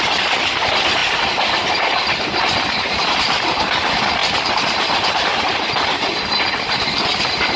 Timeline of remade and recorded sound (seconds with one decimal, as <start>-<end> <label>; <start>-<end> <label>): 0.0-1.0 remade; 1.0-1.7 recorded; 1.7-4.2 remade; 4.2-4.7 recorded; 4.7-7.6 remade